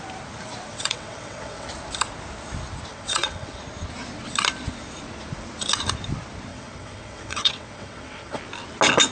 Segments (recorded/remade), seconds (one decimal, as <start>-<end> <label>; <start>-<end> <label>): 0.0-0.7 recorded; 0.7-1.7 remade; 1.7-2.9 recorded; 2.9-3.6 remade; 3.6-6.5 recorded; 6.5-8.4 remade; 8.4-9.1 recorded